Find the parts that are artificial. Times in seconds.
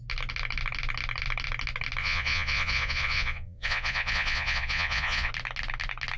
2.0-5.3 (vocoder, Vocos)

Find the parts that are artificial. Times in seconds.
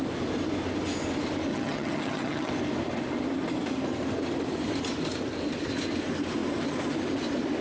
1.5-2.5 (vocoder, HiFi-GAN)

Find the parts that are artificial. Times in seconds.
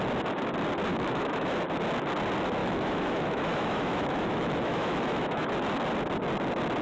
0.9-1.5 (autoencoder, DAC-VAE); 2.6-5.5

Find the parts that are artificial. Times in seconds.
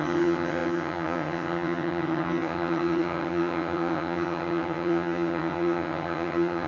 0.0-6.7 (vocoder, HiFi-GAN)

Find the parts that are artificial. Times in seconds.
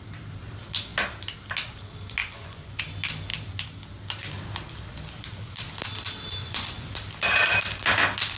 2.2-2.8 (vocoder, Vocos); 6.4-6.9